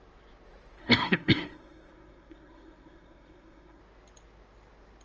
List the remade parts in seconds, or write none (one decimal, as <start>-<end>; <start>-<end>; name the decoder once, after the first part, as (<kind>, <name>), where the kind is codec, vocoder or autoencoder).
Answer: 0.8-3.8 (codec, SNAC)